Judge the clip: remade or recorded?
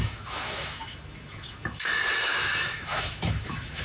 remade